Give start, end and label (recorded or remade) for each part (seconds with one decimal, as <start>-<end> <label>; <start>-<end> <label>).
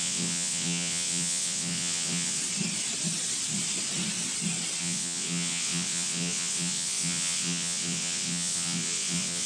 0.0-2.4 remade; 2.4-4.8 recorded; 4.8-9.5 remade